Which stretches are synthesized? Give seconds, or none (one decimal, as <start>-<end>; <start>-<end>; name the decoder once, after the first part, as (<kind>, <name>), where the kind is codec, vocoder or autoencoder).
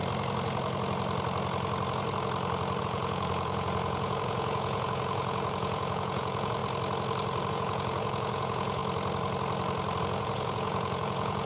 2.8-6.6 (vocoder, Vocos); 7.5-8.8; 10.0-11.5